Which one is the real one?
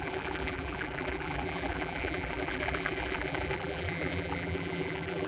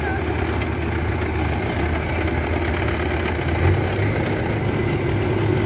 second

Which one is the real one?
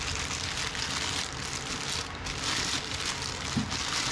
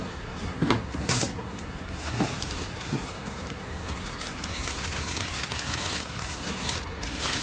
first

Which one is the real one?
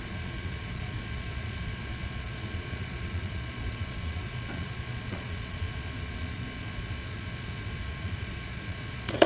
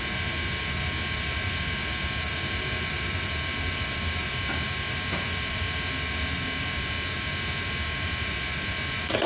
second